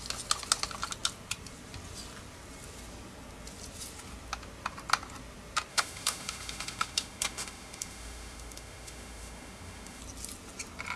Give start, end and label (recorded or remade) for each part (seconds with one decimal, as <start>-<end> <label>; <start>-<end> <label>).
0.0-5.7 recorded; 5.7-10.0 remade; 10.0-11.0 recorded

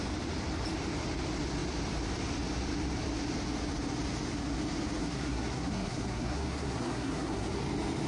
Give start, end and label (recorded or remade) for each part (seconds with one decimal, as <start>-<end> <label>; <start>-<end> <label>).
0.0-5.0 recorded; 5.0-7.5 remade; 7.5-8.1 recorded

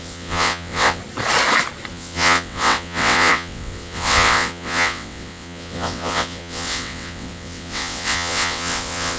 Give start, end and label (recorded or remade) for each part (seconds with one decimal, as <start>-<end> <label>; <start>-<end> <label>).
0.0-1.0 remade; 1.0-1.9 recorded; 1.9-9.2 remade

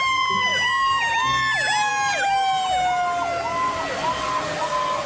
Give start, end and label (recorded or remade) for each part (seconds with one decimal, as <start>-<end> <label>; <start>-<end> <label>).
0.0-5.1 recorded

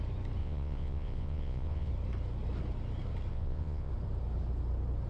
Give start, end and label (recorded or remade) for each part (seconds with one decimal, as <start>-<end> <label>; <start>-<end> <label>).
0.0-0.4 recorded; 0.4-1.9 remade; 1.9-3.3 recorded; 3.3-3.9 remade; 3.9-5.1 recorded

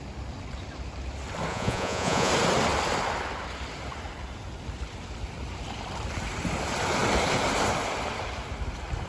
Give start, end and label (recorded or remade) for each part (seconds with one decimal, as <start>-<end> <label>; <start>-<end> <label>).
0.0-1.5 recorded; 1.5-2.3 remade; 2.3-9.1 recorded

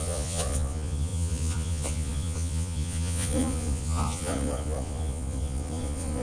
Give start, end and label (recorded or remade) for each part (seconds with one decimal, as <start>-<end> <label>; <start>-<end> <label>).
0.0-6.2 remade